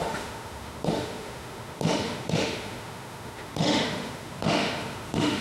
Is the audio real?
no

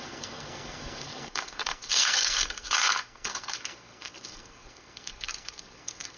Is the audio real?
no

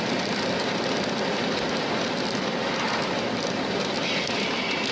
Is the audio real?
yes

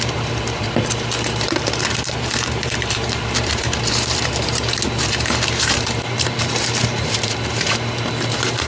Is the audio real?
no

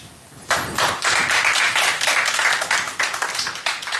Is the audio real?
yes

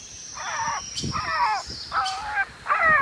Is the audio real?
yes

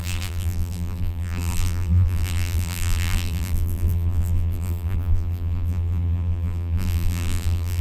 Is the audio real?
no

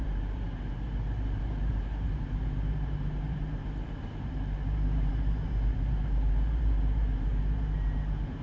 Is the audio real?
no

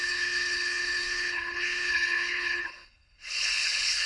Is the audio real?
no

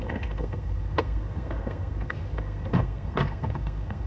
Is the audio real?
no